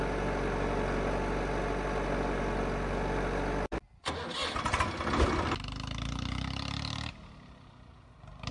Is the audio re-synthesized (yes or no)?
no